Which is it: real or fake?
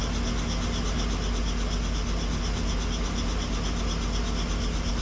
real